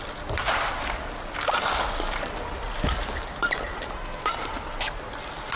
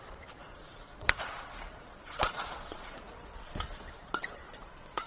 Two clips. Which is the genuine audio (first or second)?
first